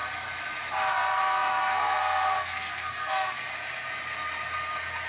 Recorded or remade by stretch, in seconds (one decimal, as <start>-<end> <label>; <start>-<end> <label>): 0.0-0.9 recorded; 0.9-3.5 remade; 3.5-5.1 recorded